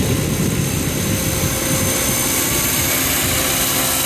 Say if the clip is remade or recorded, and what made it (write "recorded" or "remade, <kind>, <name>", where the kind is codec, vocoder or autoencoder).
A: recorded